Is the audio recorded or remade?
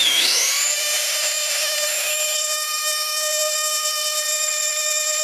remade